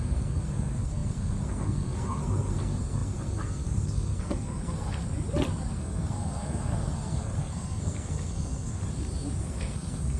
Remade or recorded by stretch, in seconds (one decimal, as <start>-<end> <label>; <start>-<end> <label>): 0.0-5.0 remade; 5.0-5.7 recorded; 5.7-8.8 remade; 8.8-9.4 recorded; 9.4-10.2 remade